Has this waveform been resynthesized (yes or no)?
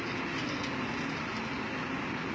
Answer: no